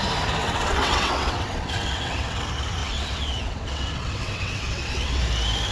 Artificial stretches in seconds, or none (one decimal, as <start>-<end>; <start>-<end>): 0.4-2.4; 2.8-5.2